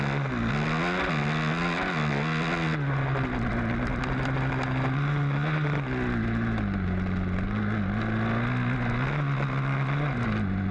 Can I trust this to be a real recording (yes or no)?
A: yes